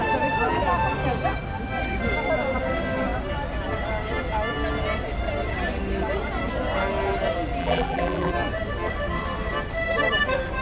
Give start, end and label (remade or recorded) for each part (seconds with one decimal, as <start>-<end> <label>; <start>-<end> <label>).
0.0-7.6 recorded; 7.6-8.3 remade; 8.3-10.6 recorded